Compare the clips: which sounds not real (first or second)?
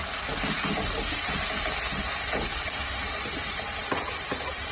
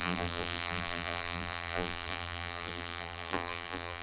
second